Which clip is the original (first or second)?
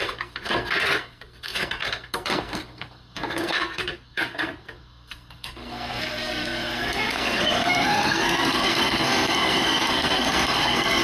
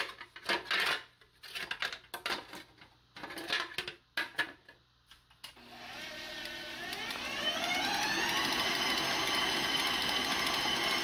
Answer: second